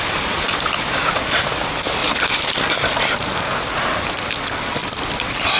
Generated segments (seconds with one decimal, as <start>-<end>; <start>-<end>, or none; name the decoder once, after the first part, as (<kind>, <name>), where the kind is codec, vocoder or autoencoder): none